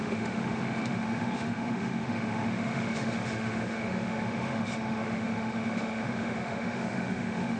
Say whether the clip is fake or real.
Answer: fake